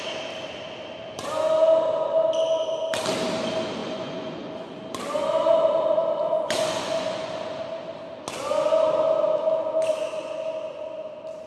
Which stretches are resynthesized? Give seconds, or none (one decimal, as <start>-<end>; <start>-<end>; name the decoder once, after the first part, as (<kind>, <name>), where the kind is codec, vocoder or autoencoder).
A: 3.8-4.8 (vocoder, Vocos); 6.2-7.6; 9.9-10.4